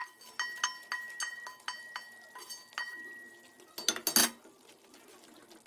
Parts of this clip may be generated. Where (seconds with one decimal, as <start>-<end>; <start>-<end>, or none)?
none